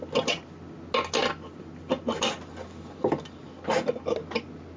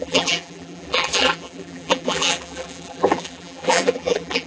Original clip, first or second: first